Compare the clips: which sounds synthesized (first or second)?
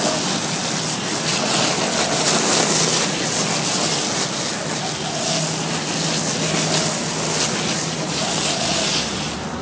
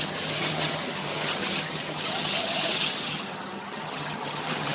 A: second